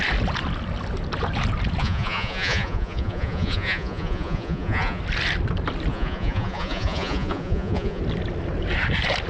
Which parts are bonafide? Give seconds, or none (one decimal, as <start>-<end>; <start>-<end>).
0.0-1.8; 5.0-5.9; 8.0-9.3